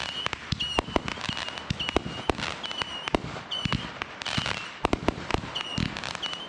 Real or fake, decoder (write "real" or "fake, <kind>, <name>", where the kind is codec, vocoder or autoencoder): real